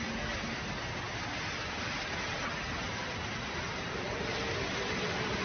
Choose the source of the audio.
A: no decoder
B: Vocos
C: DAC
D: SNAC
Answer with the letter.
A